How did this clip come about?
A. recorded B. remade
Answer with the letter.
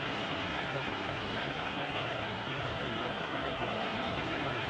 B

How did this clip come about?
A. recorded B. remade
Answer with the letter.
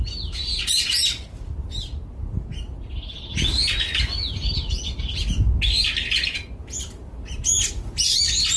A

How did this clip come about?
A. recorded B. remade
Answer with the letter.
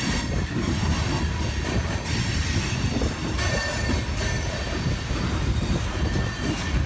A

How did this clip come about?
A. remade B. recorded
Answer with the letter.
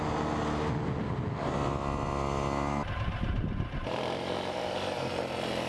B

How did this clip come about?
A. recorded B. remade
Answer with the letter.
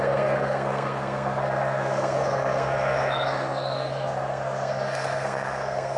B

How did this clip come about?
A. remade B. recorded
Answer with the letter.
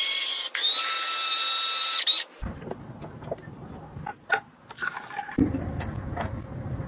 B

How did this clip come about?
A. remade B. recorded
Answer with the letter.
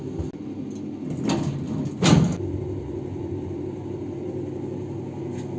B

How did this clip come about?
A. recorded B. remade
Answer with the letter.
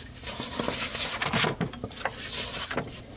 A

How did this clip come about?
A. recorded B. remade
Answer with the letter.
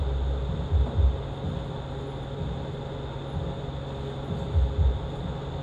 A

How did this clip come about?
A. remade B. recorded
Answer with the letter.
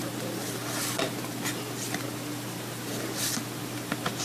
B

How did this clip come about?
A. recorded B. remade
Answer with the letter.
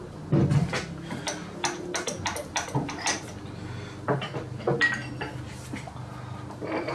A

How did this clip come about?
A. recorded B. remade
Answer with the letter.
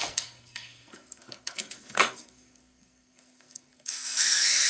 B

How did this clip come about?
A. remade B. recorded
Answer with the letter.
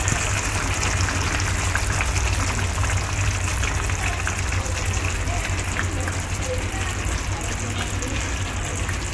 B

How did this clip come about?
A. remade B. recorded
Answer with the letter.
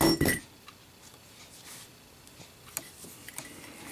B